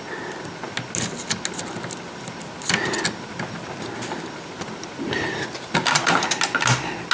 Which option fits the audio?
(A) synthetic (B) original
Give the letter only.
B